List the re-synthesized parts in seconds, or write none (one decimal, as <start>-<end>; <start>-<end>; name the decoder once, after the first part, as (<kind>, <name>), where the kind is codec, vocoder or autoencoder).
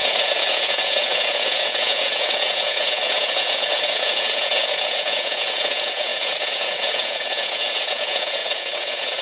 0.0-9.2 (vocoder, Vocos)